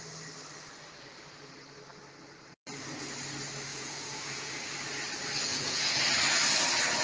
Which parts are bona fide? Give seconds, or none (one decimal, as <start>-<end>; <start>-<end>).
0.0-3.7; 4.5-5.5; 6.0-7.0